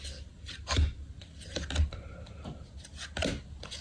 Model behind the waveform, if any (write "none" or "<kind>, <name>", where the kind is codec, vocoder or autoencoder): none